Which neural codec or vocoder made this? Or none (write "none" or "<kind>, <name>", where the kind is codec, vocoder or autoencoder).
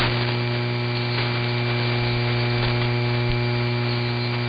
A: none